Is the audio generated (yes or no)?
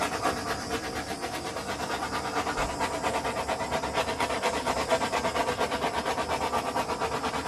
no